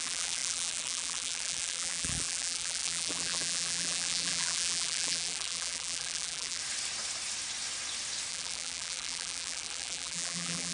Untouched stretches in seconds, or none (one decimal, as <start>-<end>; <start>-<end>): 6.6-8.3